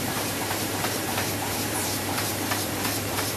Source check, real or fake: fake